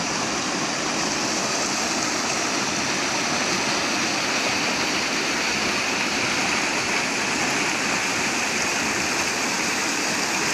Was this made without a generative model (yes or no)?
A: yes